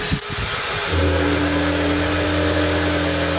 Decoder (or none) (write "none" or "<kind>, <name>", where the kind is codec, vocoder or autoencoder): none